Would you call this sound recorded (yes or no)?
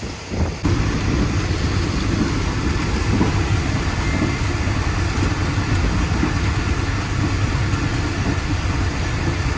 yes